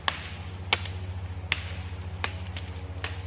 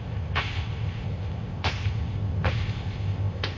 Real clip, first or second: first